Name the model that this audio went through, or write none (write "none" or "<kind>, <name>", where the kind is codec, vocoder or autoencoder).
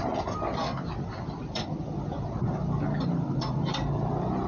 none